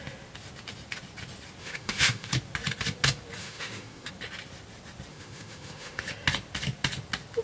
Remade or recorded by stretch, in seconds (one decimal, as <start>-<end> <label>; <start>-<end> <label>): 0.0-1.6 recorded; 1.6-2.3 remade; 2.3-3.4 recorded; 3.4-4.1 remade; 4.1-5.1 recorded; 5.1-6.0 remade; 6.0-7.4 recorded